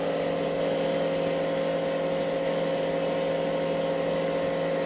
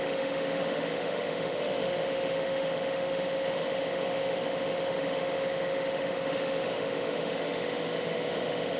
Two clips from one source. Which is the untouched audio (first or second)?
first